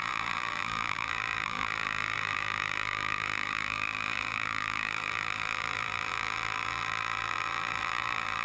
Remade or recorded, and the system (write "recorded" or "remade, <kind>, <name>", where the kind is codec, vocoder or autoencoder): remade, vocoder, BigVGAN v2